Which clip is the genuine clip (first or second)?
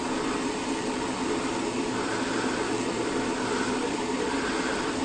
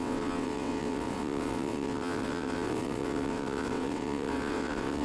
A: first